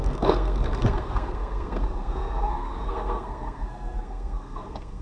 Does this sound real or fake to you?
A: fake